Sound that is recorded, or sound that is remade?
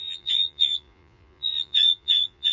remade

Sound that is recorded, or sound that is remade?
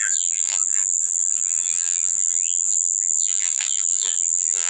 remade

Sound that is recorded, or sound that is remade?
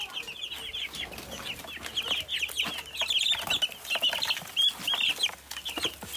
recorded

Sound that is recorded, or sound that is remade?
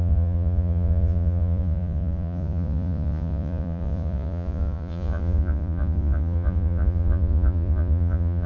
remade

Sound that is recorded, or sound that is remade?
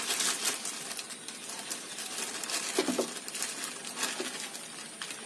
recorded